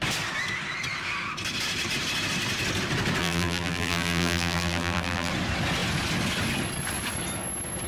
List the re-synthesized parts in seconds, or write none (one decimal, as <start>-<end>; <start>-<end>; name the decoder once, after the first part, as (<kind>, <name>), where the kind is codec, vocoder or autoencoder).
3.2-5.3 (vocoder, BigVGAN v2)